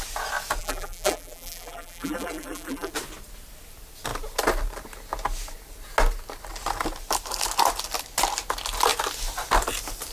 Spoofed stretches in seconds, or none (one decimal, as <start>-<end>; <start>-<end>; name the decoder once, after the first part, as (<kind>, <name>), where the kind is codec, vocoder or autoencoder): 0.6-2.9 (vocoder, BigVGAN v2)